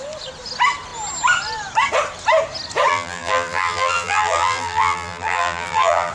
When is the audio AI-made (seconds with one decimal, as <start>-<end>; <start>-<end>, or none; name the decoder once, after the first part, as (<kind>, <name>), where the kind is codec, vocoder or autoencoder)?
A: 2.9-6.1 (vocoder, BigVGAN v2)